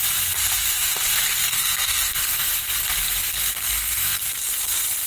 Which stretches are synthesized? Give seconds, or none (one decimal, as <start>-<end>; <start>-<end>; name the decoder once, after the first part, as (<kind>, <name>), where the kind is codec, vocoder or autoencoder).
1.5-2.5 (codec, SNAC); 3.3-4.2